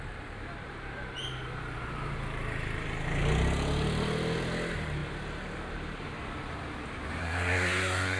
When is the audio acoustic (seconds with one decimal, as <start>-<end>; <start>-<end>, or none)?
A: 0.0-7.2